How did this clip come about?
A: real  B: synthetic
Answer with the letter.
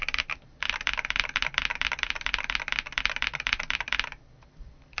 A